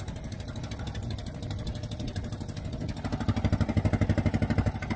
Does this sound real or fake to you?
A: real